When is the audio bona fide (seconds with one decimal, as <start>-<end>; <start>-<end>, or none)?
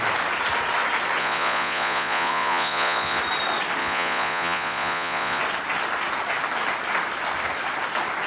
0.0-1.2; 3.2-3.8; 5.4-8.3